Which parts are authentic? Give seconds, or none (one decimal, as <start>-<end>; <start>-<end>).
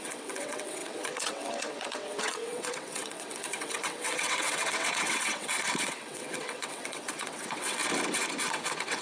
7.8-8.5